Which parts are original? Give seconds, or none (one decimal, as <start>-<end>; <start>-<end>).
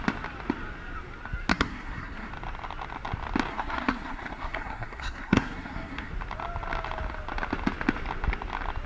0.0-1.5; 2.3-3.5; 6.1-8.9